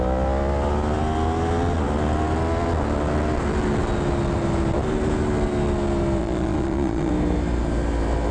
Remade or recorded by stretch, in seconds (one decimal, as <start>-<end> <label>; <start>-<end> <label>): 0.0-6.2 recorded; 6.2-7.1 remade; 7.1-8.3 recorded